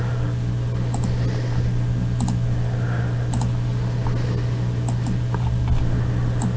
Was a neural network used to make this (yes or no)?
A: no